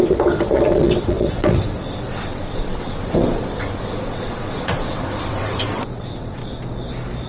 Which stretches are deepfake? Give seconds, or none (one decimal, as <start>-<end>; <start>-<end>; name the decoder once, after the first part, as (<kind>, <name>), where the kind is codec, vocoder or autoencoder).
0.0-6.4 (vocoder, WaveNeXt)